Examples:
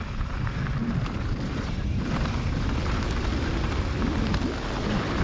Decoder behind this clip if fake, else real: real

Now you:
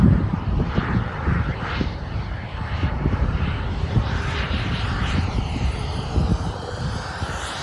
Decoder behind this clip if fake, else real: fake, vocoder, BigVGAN v2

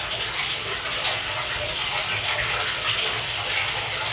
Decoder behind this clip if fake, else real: real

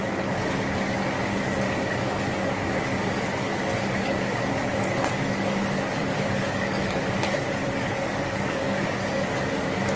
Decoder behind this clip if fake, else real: fake, codec, DAC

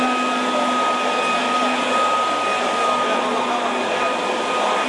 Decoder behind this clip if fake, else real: real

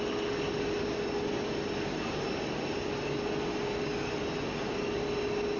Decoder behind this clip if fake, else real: real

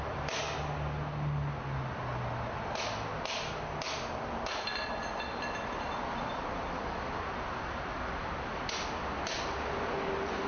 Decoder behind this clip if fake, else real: real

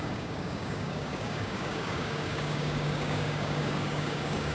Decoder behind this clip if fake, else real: fake, codec, DAC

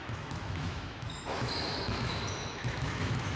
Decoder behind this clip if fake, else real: fake, autoencoder, DAC-VAE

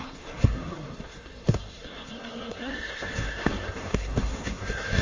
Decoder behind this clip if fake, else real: fake, codec, SNAC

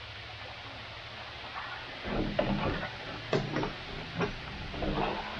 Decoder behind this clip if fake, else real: real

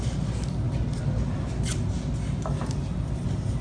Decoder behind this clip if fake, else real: real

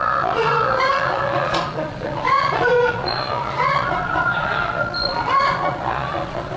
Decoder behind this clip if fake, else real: fake, vocoder, Vocos